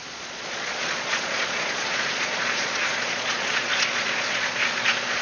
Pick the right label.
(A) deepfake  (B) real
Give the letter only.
A